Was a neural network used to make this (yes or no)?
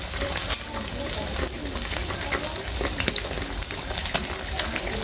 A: no